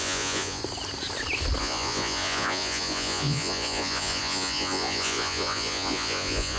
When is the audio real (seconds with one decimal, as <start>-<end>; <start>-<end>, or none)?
0.6-1.6